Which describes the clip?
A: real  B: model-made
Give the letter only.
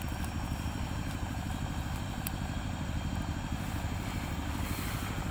A